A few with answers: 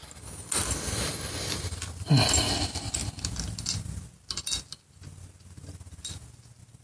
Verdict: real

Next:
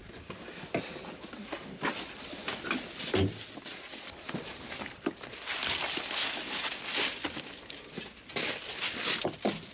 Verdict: real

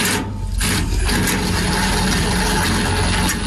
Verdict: real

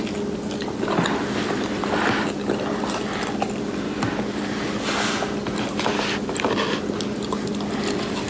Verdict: real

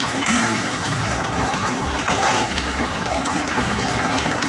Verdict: fake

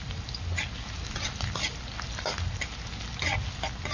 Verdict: real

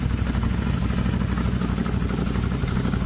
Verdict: real